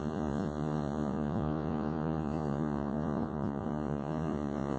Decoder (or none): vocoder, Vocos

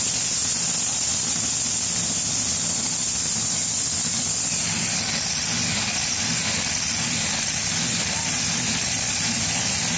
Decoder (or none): none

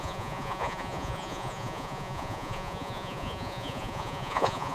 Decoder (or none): vocoder, Vocos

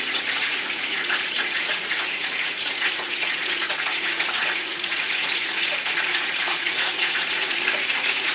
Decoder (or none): vocoder, Vocos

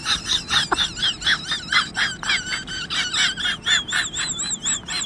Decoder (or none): none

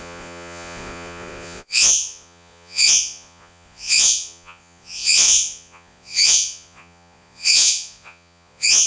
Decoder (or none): vocoder, Vocos